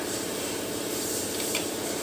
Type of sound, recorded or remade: remade